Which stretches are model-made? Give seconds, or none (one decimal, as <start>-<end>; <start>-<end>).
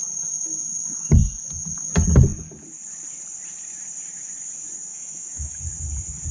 4.9-5.6